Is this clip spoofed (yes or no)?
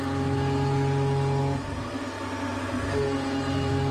no